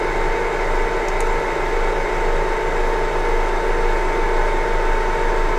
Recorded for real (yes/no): yes